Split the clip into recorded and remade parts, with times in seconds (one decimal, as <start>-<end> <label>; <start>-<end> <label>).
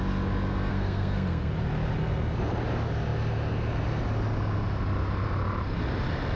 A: 0.0-0.7 recorded; 0.7-1.5 remade; 1.5-6.4 recorded